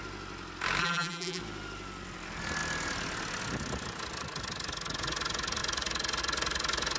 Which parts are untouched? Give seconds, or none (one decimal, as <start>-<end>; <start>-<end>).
0.0-0.8; 1.4-7.0